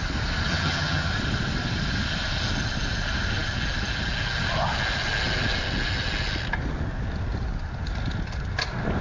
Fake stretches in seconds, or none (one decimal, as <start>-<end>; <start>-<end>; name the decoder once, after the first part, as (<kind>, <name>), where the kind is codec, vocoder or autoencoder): 0.5-1.1 (vocoder, HiFi-GAN)